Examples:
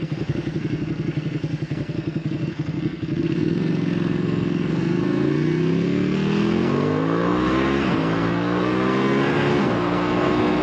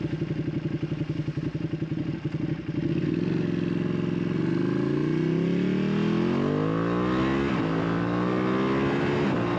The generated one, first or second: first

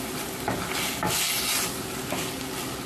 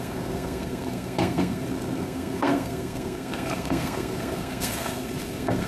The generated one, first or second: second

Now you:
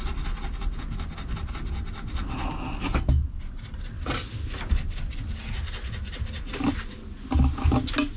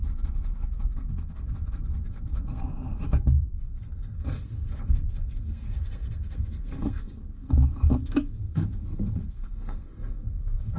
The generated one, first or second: second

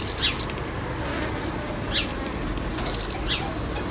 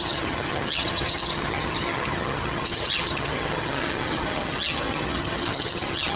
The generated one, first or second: second